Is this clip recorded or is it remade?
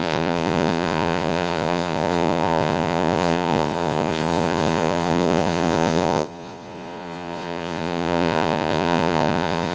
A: remade